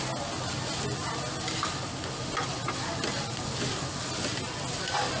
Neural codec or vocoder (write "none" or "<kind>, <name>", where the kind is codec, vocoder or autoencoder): none